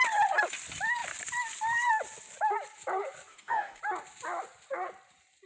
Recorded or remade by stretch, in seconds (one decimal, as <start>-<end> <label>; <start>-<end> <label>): 0.0-3.3 recorded; 3.3-3.8 remade; 3.8-5.5 recorded